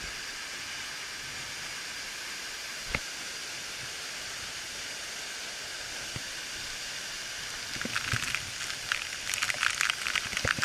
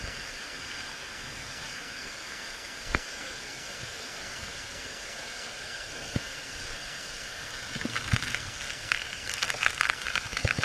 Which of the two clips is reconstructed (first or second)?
second